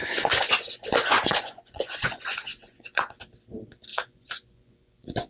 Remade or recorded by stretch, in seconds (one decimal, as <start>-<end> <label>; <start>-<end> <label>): 0.0-3.2 remade; 3.2-3.9 recorded; 3.9-5.3 remade